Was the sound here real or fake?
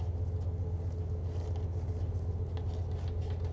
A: real